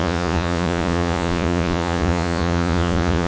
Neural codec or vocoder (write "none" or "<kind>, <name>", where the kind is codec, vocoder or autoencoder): vocoder, Vocos